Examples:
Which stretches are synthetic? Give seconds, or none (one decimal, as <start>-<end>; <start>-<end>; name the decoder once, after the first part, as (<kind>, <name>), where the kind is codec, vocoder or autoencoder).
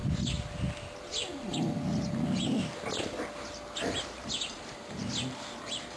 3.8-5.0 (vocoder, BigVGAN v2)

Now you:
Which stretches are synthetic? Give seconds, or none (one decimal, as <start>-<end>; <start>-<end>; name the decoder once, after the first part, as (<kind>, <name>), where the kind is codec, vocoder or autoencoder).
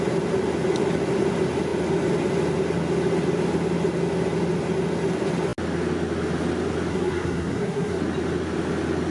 6.9-8.0 (codec, SNAC)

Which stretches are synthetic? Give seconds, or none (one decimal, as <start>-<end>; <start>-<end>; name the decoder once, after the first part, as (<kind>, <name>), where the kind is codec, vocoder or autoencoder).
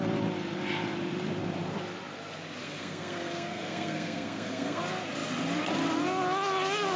2.6-4.8 (codec, SNAC)